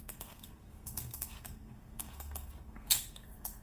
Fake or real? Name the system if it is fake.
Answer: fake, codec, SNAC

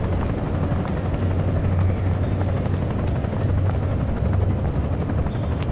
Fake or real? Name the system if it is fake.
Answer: real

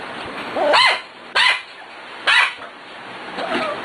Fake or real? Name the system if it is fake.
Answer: real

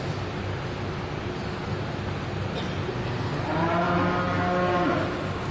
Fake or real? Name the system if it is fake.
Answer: real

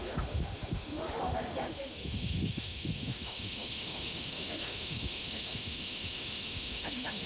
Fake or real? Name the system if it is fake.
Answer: fake, autoencoder, DAC-VAE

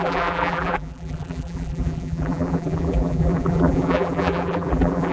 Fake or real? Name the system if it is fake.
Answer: fake, vocoder, BigVGAN v2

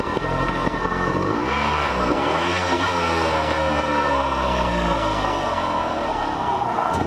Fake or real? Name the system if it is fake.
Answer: fake, codec, SNAC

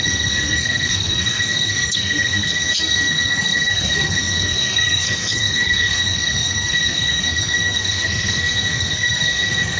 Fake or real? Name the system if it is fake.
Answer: fake, codec, SNAC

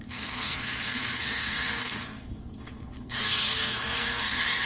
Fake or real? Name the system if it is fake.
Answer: fake, codec, SNAC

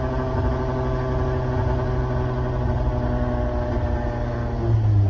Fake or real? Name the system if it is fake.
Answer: real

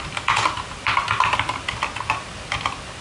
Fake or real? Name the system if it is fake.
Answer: real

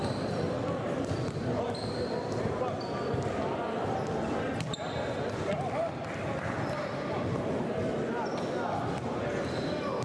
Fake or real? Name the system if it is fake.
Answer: real